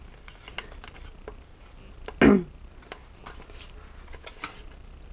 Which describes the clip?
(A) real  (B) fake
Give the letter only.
A